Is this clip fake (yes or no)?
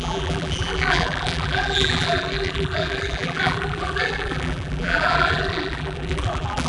yes